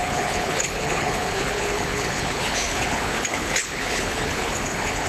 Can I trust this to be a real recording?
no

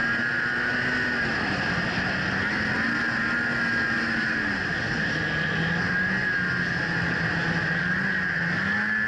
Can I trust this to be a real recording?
yes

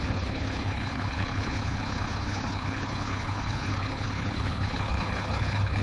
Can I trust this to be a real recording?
no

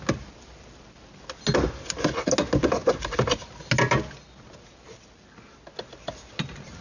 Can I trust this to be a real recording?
yes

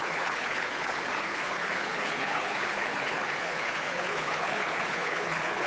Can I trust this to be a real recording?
no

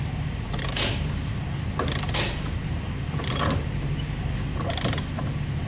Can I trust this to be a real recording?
yes